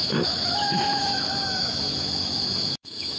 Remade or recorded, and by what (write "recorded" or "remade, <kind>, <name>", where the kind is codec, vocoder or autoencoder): remade, autoencoder, DAC-VAE